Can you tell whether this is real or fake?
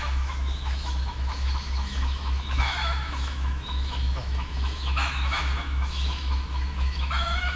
fake